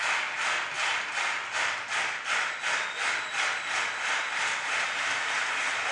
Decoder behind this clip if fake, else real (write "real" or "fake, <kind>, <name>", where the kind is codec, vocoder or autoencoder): real